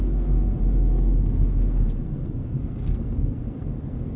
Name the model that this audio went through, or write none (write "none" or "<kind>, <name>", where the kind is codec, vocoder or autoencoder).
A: codec, SNAC